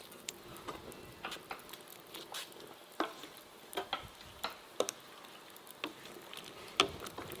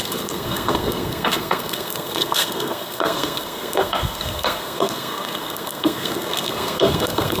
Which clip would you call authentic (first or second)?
first